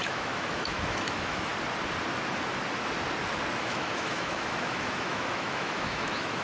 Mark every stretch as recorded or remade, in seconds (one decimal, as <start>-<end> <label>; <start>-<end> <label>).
0.0-1.5 remade; 1.5-3.6 recorded; 3.6-6.4 remade